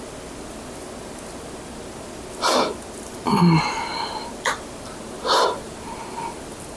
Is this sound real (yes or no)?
yes